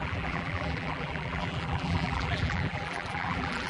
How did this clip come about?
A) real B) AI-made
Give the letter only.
B